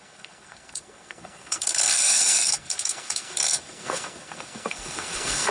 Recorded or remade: remade